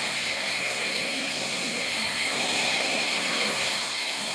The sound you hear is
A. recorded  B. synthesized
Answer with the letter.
B